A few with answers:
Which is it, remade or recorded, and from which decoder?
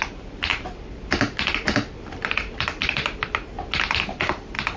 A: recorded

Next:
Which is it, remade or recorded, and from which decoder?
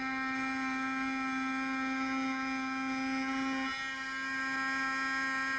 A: recorded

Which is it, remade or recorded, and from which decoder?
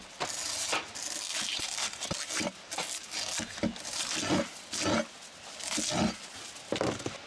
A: recorded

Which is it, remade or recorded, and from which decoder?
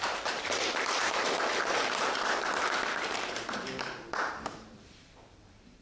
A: remade, vocoder, BigVGAN v2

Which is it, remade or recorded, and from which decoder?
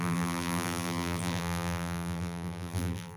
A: remade, vocoder, BigVGAN v2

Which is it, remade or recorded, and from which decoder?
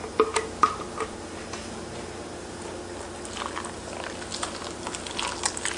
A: recorded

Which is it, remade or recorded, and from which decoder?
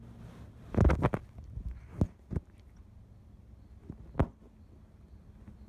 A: recorded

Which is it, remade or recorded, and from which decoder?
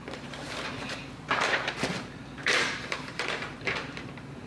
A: remade, vocoder, BigVGAN v2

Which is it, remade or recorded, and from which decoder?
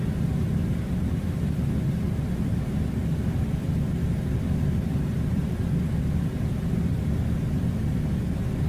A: remade, vocoder, BigVGAN v2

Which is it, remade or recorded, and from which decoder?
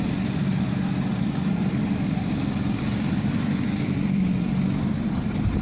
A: remade, vocoder, BigVGAN v2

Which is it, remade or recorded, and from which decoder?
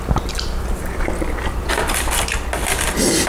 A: recorded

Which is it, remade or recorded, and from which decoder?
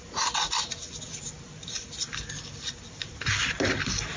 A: remade, vocoder, BigVGAN v2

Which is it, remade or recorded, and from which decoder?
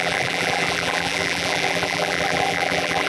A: remade, vocoder, BigVGAN v2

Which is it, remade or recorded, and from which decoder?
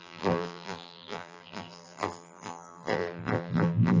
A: remade, vocoder, BigVGAN v2